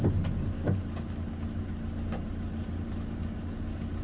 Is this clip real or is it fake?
real